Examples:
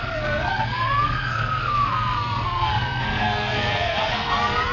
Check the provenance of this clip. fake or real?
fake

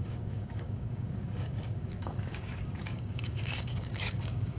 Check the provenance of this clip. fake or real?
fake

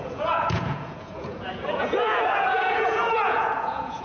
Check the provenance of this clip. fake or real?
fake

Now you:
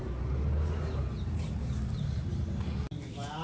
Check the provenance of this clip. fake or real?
real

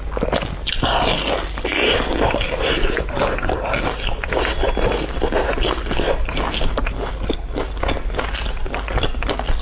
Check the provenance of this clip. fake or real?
real